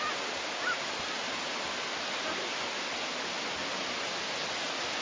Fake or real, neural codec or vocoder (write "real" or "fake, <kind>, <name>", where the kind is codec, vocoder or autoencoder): real